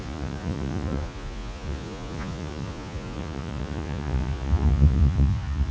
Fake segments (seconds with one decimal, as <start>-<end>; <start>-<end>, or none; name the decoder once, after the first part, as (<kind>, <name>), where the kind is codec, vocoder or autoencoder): 0.0-5.7 (vocoder, Vocos)